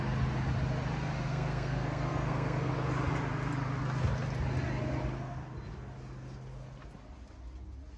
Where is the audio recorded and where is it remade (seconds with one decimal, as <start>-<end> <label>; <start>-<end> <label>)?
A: 0.0-1.3 recorded; 1.3-2.7 remade; 2.7-8.0 recorded